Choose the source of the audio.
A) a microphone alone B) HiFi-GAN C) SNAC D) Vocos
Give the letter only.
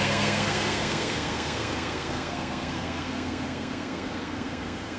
C